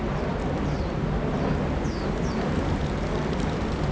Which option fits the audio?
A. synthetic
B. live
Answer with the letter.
B